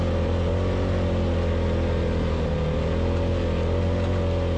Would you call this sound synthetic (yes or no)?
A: no